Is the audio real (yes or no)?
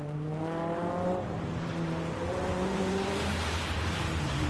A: no